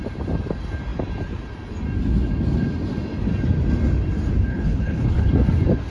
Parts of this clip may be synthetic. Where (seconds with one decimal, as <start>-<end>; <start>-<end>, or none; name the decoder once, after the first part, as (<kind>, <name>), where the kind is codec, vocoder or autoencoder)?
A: 4.5-5.3 (codec, HILCodec)